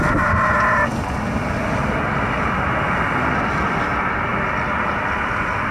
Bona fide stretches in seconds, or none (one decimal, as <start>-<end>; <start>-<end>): 0.0-5.7